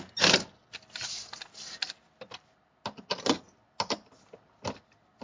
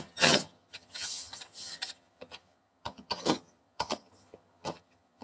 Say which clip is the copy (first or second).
second